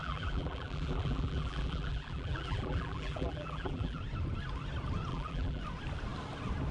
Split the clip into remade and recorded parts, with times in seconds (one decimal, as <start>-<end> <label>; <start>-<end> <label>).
0.0-4.0 remade; 4.0-5.1 recorded; 5.1-5.6 remade; 5.6-6.7 recorded